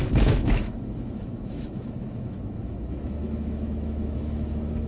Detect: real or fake fake